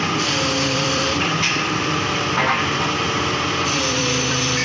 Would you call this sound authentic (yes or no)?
no